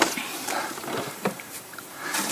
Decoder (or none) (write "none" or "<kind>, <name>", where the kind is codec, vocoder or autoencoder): vocoder, BigVGAN v2